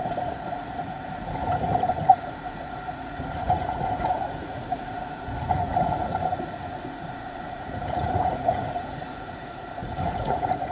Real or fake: fake